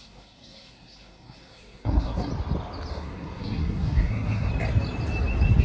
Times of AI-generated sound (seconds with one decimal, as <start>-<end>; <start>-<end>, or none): 0.0-2.3; 2.9-4.5